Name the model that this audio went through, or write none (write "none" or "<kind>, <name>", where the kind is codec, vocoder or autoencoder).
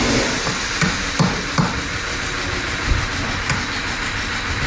none